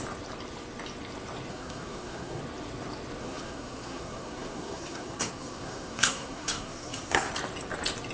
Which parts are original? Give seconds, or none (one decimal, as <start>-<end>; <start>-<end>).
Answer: 0.0-1.5; 2.4-3.2; 7.3-8.1